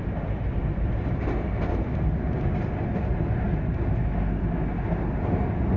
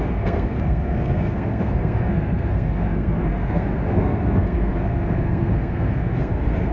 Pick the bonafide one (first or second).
first